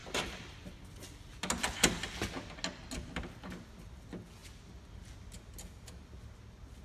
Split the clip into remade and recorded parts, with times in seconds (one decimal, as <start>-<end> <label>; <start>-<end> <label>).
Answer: 0.0-6.8 recorded